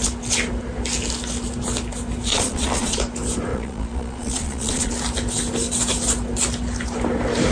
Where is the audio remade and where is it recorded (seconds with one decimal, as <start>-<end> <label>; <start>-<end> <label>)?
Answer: 0.0-2.3 recorded; 2.3-3.0 remade; 3.0-3.5 recorded; 3.5-4.9 remade; 4.9-7.5 recorded